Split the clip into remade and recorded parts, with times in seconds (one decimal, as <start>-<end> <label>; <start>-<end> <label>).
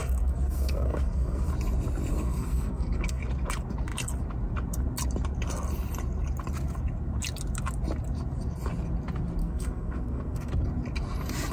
0.0-1.5 remade; 1.5-2.1 recorded; 2.1-3.2 remade; 3.2-9.4 recorded; 9.4-10.5 remade; 10.5-11.5 recorded